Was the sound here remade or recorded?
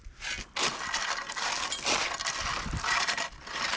recorded